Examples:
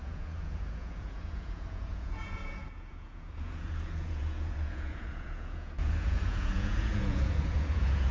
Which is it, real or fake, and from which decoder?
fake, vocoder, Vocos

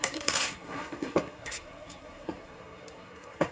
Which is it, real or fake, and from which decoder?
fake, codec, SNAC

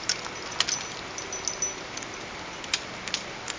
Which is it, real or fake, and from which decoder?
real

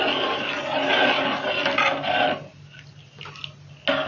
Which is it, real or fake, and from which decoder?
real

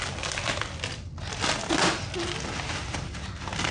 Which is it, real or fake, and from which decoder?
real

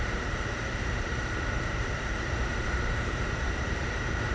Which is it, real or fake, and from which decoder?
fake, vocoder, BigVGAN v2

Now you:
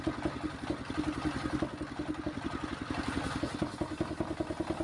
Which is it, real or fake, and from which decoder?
real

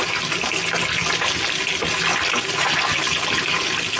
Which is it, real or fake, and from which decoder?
real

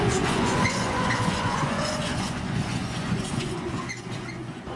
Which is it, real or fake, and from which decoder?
fake, vocoder, Vocos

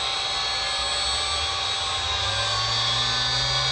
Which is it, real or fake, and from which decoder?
real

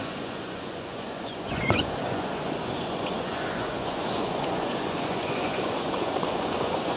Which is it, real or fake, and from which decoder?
fake, vocoder, Vocos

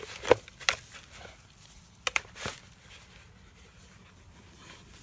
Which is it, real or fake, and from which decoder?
real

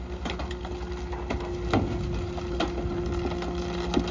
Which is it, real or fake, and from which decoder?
real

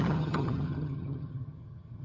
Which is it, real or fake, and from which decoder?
fake, vocoder, HiFi-GAN